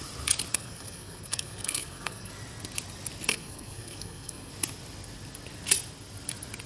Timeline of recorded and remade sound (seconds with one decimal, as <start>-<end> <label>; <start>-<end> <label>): 0.0-0.5 recorded; 0.5-2.3 remade; 2.3-3.3 recorded; 3.3-4.5 remade; 4.5-6.7 recorded